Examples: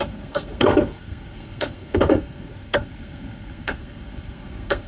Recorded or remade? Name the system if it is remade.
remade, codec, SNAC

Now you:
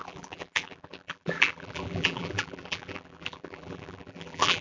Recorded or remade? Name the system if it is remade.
remade, vocoder, BigVGAN v2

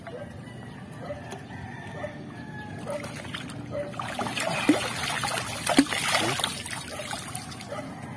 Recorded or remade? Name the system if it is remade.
recorded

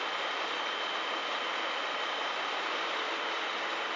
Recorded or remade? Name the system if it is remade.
recorded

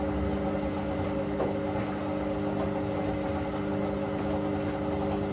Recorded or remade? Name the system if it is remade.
recorded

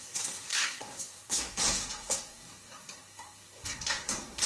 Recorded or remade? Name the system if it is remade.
remade, codec, SNAC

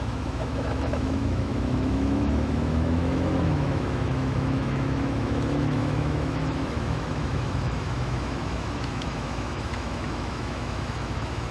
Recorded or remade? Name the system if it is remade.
remade, autoencoder, DAC-VAE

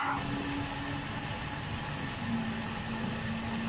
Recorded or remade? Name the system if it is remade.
recorded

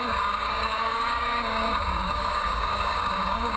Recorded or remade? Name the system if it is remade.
remade, codec, DAC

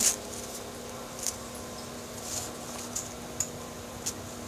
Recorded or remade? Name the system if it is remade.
recorded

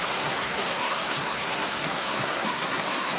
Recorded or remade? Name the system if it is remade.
remade, codec, SNAC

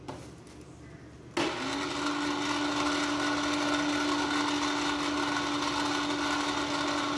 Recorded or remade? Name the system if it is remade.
recorded